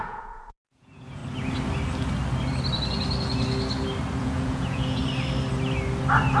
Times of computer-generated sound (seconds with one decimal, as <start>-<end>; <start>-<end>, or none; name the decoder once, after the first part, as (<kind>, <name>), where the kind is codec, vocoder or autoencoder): 0.0-1.2 (vocoder, Vocos); 4.2-5.0